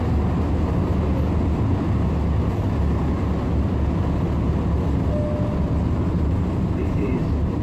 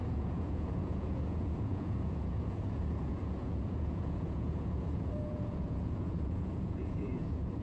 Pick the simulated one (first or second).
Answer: second